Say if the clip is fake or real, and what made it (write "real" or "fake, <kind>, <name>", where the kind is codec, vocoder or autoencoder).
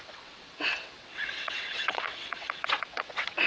fake, vocoder, WaveNeXt